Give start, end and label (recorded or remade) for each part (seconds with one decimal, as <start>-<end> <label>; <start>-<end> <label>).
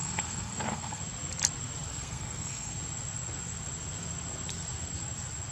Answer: 0.0-1.0 remade; 1.0-1.9 recorded; 1.9-2.7 remade; 2.7-5.5 recorded